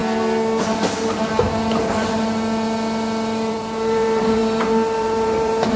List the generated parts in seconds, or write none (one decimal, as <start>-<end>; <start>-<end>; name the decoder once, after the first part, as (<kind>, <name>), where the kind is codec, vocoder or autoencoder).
3.5-4.4 (vocoder, BigVGAN v2); 5.0-5.8